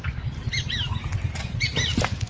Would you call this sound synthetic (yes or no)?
no